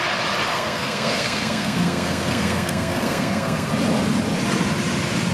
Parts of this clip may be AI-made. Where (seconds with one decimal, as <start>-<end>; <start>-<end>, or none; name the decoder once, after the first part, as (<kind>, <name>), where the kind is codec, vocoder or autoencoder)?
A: 0.5-3.7 (codec, SNAC)